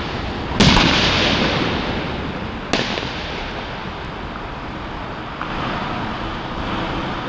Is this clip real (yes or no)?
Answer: yes